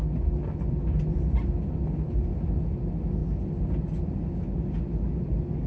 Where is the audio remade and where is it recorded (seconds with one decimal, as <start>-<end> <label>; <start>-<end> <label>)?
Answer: 0.0-5.7 recorded